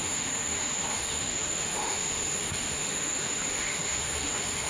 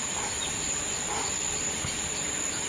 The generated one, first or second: first